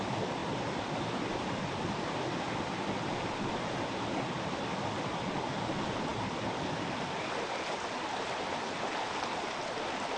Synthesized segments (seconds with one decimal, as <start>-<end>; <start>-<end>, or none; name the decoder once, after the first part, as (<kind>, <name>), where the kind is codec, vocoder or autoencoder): none